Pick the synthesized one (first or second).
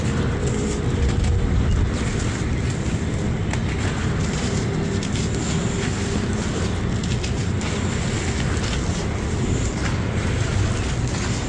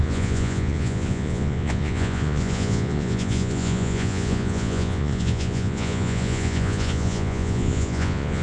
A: second